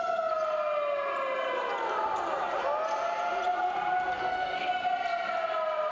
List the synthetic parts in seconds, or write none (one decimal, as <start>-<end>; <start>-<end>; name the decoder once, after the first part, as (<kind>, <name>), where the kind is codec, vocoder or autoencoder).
4.2-4.7 (codec, SNAC)

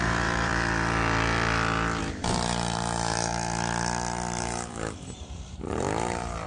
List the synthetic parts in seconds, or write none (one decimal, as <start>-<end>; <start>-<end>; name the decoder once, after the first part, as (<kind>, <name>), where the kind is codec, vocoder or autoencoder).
0.0-0.5 (vocoder, BigVGAN v2); 2.0-3.3; 4.4-6.5

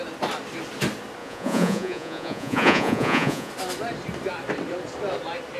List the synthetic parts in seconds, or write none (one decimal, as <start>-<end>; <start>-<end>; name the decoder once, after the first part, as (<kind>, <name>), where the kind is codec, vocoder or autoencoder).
1.2-3.5 (vocoder, Vocos)

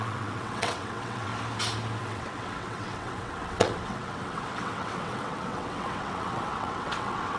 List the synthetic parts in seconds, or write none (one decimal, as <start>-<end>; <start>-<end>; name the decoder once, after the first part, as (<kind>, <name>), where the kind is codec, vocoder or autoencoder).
0.0-1.3 (vocoder, WaveNeXt); 2.0-7.4

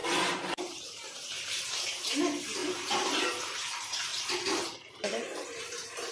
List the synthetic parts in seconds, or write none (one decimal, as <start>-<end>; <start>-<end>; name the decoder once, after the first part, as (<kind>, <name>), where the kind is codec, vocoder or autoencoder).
0.0-6.1 (vocoder, BigVGAN v2)